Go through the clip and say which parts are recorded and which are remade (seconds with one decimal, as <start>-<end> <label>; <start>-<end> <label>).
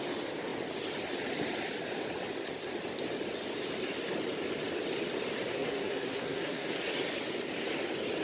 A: 0.0-5.5 recorded; 5.5-6.8 remade; 6.8-8.2 recorded